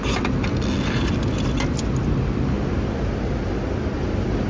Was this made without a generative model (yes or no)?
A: yes